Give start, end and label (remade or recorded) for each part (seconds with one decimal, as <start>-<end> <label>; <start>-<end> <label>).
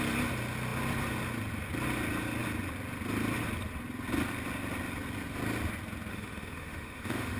0.0-6.1 recorded; 6.1-7.4 remade